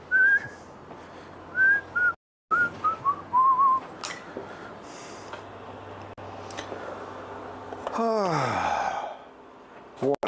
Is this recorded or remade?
recorded